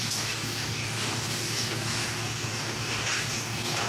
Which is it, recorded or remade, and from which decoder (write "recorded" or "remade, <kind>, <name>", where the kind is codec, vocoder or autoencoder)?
remade, codec, DAC